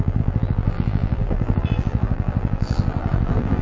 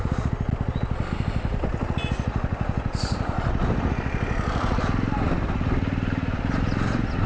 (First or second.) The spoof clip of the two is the first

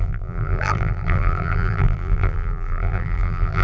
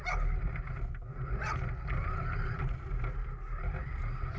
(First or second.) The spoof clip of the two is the first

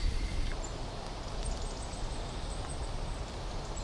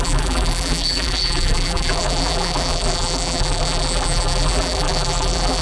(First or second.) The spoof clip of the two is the second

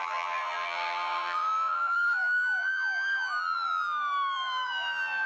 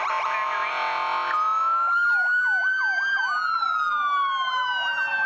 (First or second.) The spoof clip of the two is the first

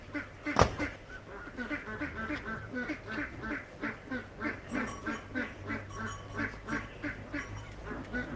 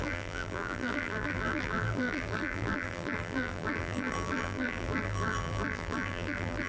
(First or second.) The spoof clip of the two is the second